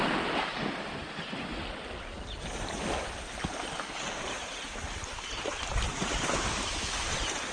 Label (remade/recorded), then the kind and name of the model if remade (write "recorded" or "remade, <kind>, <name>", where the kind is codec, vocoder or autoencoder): recorded